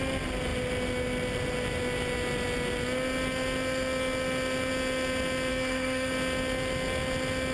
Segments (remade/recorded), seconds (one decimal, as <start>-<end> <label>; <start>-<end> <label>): 0.0-5.5 recorded; 5.5-6.1 remade; 6.1-7.5 recorded